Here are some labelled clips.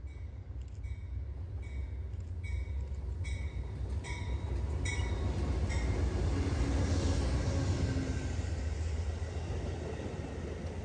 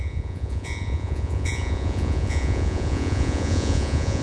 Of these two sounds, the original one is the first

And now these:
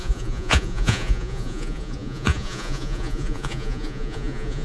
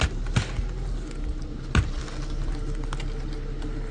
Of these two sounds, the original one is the second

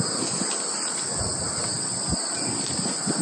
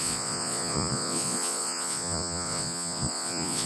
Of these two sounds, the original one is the first